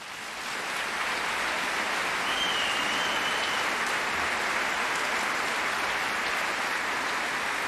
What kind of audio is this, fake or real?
real